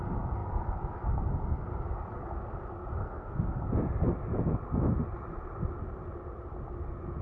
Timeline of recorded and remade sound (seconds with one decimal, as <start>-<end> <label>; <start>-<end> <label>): 0.0-3.0 recorded; 3.0-3.6 remade; 3.6-7.2 recorded